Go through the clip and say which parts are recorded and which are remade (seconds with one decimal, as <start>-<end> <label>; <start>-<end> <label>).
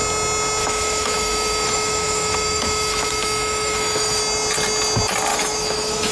0.0-0.6 recorded; 0.6-4.2 remade; 4.2-5.3 recorded; 5.3-6.1 remade